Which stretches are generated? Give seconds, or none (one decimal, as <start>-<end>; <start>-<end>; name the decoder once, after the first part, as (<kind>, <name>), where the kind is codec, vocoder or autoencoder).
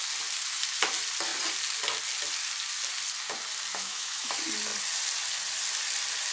3.7-4.3 (autoencoder, DAC-VAE)